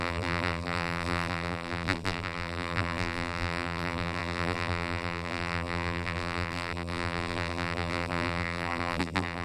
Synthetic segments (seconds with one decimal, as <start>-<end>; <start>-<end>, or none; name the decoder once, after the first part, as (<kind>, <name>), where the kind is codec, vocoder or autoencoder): 0.0-9.4 (vocoder, BigVGAN v2)